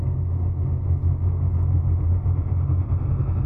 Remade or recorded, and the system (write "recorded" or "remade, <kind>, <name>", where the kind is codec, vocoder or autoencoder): recorded